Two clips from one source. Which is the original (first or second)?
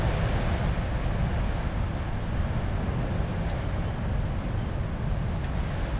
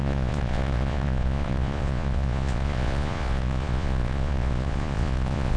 first